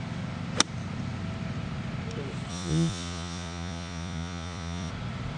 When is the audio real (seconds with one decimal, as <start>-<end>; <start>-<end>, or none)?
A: 0.0-2.5; 4.9-5.4